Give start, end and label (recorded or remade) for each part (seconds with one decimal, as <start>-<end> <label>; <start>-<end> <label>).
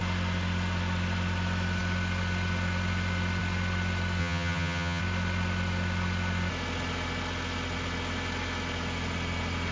0.0-4.2 recorded; 4.2-5.0 remade; 5.0-9.7 recorded